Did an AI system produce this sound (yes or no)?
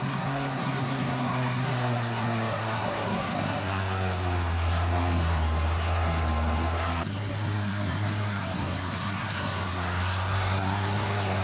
yes